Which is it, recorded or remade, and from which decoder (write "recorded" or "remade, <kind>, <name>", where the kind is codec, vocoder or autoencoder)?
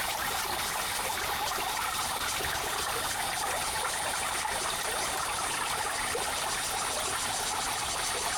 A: recorded